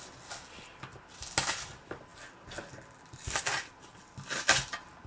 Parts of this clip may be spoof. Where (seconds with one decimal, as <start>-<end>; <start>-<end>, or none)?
none